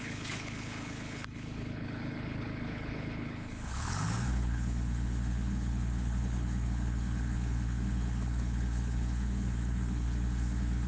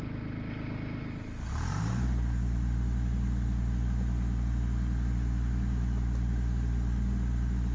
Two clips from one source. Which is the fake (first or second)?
first